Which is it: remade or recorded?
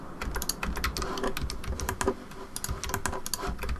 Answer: recorded